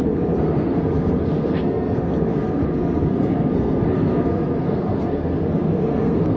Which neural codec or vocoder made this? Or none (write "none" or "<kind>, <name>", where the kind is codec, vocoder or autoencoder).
codec, SNAC